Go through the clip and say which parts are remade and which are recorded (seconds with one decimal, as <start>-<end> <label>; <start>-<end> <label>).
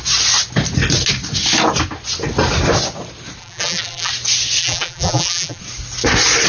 0.0-3.4 recorded; 3.4-4.1 remade; 4.1-4.6 recorded; 4.6-5.6 remade; 5.6-6.5 recorded